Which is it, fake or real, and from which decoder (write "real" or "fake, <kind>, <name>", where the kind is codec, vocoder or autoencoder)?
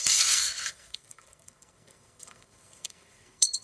fake, codec, SNAC